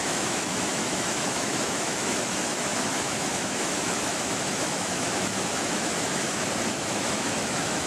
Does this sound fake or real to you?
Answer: fake